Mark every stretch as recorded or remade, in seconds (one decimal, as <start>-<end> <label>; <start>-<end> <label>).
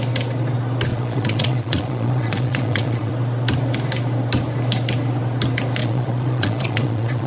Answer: 0.0-0.9 recorded; 0.9-3.1 remade; 3.1-5.8 recorded; 5.8-7.3 remade